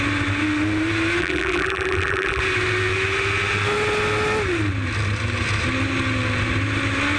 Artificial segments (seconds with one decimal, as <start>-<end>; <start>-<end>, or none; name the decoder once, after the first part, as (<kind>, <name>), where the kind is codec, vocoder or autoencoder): 1.2-2.4 (vocoder, BigVGAN v2)